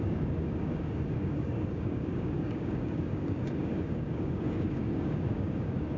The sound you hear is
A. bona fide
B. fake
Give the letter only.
B